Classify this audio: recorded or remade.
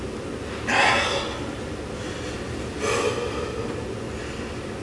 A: recorded